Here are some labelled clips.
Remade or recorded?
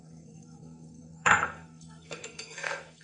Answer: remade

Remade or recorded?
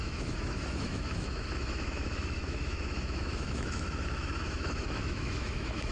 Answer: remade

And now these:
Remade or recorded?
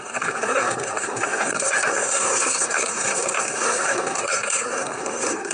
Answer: remade